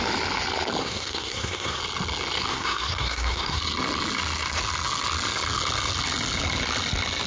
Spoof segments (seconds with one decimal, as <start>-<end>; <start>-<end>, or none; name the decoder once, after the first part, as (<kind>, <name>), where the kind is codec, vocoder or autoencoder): 0.8-1.8 (codec, SNAC); 2.5-3.6